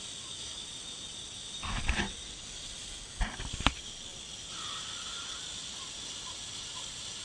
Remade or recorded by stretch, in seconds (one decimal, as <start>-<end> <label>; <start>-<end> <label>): 0.0-7.2 recorded